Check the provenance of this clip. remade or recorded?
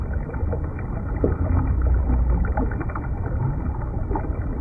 remade